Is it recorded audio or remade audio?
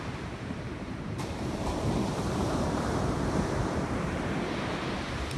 remade